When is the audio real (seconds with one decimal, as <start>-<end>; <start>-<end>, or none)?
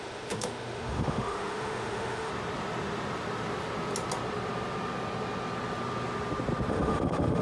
2.3-6.7